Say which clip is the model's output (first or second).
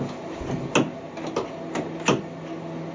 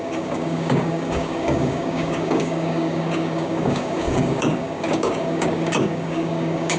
second